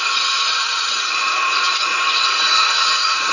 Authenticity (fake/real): fake